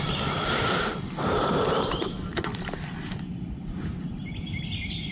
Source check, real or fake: real